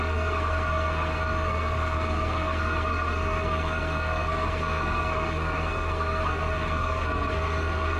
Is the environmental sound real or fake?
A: fake